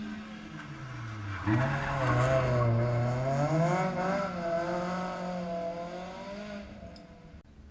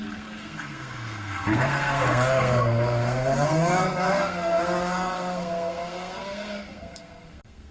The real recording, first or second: first